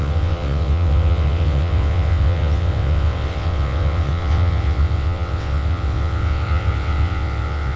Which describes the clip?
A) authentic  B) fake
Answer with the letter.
B